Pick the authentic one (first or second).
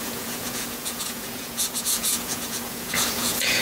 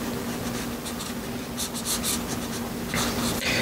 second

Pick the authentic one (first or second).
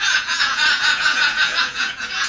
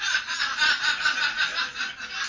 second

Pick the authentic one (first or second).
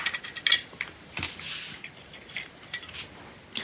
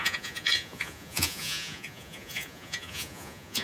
first